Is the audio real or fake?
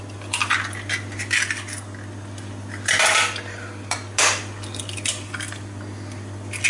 real